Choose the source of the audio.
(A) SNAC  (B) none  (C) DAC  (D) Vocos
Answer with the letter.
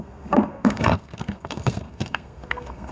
A